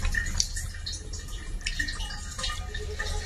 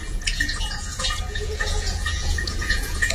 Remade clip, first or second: second